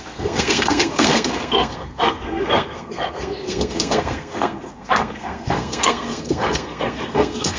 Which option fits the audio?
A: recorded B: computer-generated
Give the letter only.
B